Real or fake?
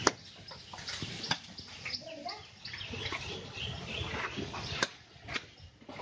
real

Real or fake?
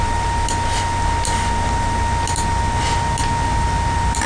real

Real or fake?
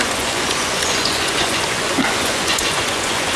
fake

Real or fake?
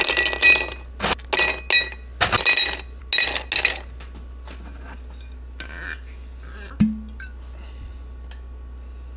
real